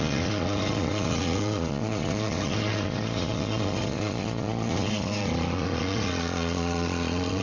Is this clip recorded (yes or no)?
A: no